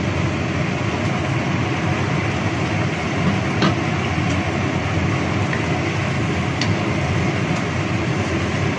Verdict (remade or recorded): recorded